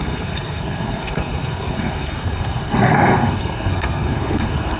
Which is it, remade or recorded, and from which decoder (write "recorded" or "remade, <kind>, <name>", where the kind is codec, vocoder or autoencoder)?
remade, codec, SNAC